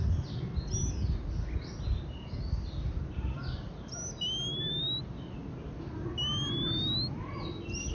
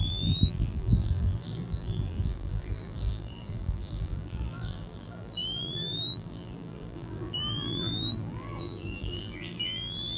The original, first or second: first